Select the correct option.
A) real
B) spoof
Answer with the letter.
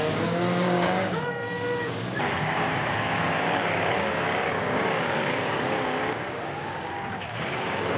B